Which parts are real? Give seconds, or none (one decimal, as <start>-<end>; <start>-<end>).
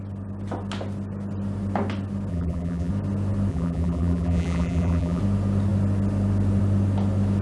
0.0-2.3; 2.9-3.5; 5.2-7.4